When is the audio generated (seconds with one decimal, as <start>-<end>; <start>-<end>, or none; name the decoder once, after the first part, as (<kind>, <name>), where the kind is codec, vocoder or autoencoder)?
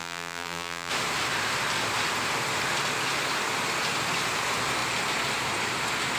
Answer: 0.0-0.9 (vocoder, BigVGAN v2)